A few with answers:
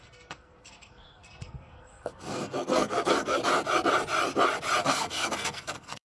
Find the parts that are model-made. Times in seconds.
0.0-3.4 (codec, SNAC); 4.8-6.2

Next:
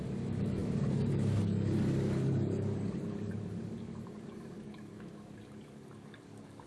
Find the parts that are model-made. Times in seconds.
0.0-6.7 (codec, DAC)

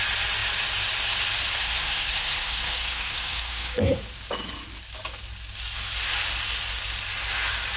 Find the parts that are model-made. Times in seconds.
1.6-4.0 (codec, SNAC)